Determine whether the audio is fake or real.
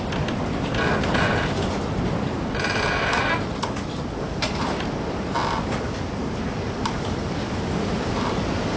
real